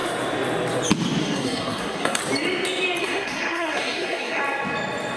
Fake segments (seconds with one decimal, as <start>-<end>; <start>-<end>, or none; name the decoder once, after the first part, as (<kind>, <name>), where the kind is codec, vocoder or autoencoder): 1.2-2.2 (codec, SNAC); 3.0-4.4